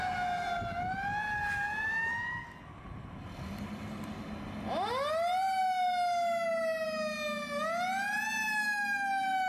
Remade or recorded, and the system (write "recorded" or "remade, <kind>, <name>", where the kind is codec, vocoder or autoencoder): recorded